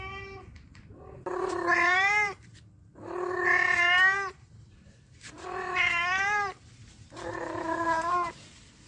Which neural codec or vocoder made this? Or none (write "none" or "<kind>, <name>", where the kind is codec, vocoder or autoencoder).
vocoder, BigVGAN v2